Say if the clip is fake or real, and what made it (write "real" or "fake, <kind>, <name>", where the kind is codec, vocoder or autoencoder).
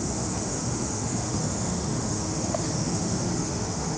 fake, autoencoder, DAC-VAE